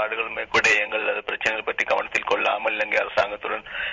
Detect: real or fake fake